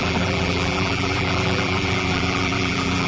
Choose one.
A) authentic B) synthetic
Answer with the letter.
B